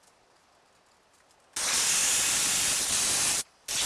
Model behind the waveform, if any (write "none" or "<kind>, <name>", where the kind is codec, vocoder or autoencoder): none